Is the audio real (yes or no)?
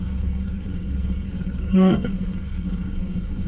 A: no